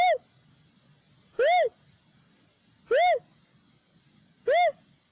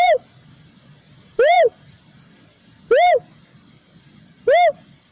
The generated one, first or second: second